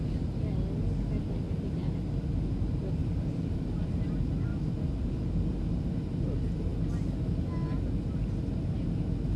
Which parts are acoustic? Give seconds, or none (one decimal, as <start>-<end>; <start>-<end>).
0.0-3.0; 4.1-4.5; 5.9-9.4